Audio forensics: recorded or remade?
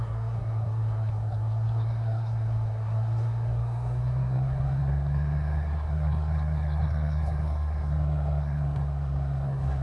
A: remade